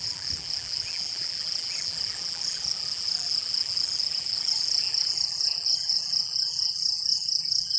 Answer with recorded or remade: remade